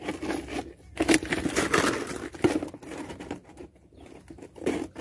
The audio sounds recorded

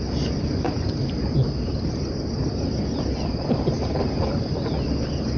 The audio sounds recorded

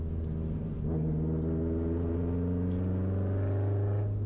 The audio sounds recorded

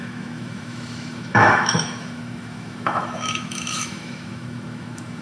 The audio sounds remade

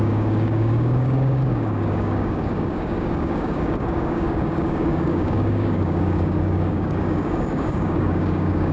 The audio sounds remade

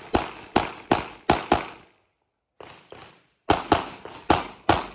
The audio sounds recorded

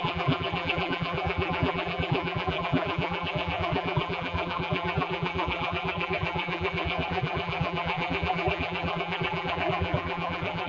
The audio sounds remade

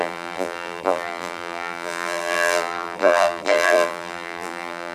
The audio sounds remade